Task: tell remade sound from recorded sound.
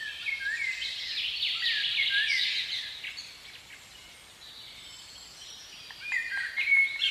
recorded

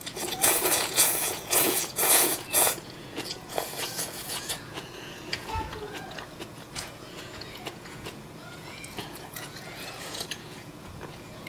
remade